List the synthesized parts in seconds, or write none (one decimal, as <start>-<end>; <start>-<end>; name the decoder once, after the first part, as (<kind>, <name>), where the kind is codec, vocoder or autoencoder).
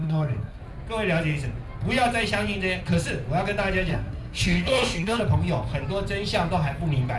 0.0-0.6 (codec, SNAC); 3.9-5.2